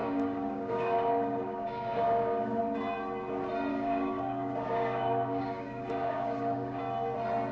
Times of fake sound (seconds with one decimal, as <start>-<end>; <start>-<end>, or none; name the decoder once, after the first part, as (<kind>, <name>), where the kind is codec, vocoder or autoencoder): 0.0-2.6 (codec, DAC); 3.7-6.8